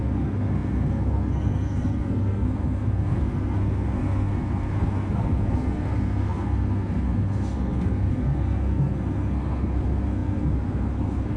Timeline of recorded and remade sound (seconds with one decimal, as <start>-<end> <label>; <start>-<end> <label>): 0.0-11.4 remade